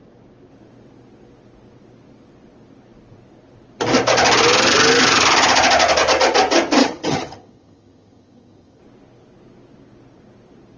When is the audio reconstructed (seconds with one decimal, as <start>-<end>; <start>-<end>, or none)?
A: 6.8-8.8